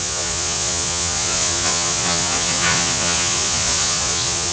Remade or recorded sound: remade